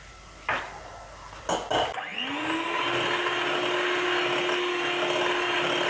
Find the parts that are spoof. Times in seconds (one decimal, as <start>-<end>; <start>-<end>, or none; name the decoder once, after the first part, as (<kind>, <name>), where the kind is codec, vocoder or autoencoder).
none